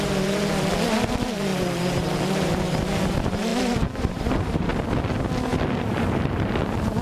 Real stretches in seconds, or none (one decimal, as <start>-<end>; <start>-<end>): 4.7-5.8